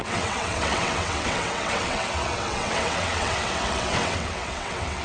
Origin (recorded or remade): remade